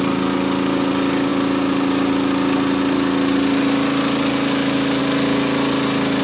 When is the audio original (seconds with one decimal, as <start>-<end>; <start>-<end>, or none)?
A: 0.0-6.2